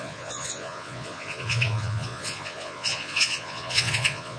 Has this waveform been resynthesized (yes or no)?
yes